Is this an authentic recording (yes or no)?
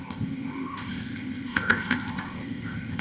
no